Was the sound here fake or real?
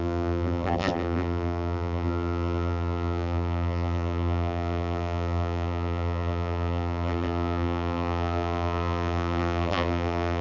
fake